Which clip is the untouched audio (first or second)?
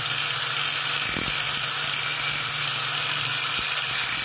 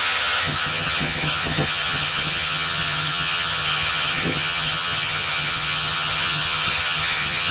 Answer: first